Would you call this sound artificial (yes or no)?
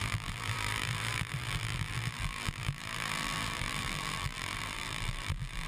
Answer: yes